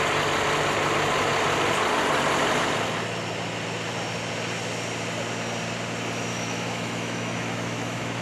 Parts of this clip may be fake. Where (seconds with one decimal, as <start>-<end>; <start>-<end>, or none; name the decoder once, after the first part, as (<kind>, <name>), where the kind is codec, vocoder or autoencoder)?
6.3-8.2 (autoencoder, DAC-VAE)